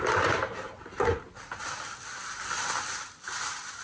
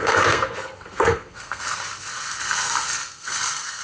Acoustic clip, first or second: first